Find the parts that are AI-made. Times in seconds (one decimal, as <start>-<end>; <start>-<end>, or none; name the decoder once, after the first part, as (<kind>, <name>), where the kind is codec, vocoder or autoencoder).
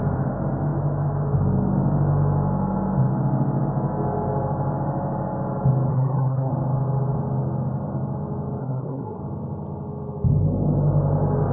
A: 5.9-6.5 (codec, SNAC); 8.6-9.2